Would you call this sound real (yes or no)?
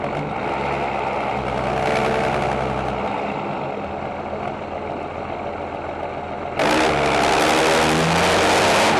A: yes